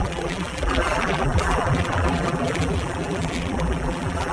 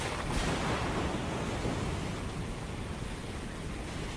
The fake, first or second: first